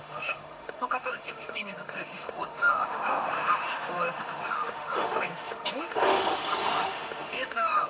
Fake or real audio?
fake